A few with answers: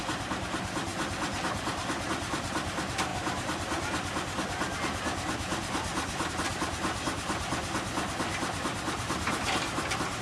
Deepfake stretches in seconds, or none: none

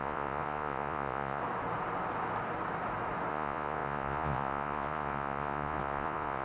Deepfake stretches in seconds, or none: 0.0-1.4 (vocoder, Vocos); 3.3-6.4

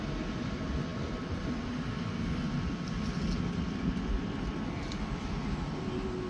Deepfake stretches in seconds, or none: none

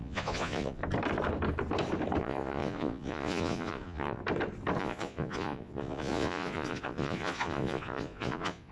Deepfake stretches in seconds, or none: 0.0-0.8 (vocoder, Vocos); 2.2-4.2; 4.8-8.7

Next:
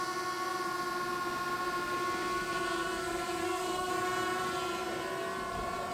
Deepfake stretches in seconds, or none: 3.4-3.9 (codec, SNAC)